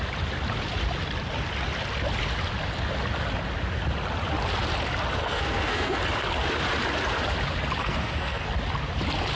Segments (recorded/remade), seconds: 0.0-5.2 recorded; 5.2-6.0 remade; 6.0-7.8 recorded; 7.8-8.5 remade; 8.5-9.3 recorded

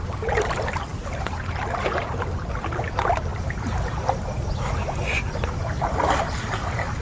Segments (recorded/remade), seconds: 0.0-7.0 recorded

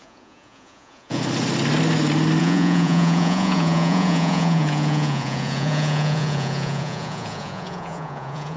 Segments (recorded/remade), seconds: 0.0-1.2 remade; 1.2-2.4 recorded; 2.4-8.6 remade

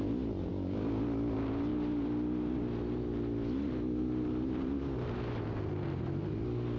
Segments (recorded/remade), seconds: 0.0-0.5 recorded; 0.5-1.0 remade; 1.0-6.8 recorded

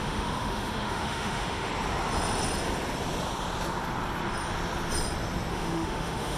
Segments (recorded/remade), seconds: 0.0-1.7 remade; 1.7-5.5 recorded; 5.5-6.4 remade

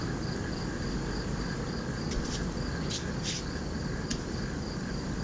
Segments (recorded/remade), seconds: 0.0-5.2 recorded